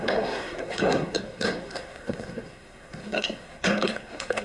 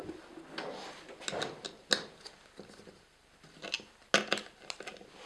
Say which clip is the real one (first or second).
second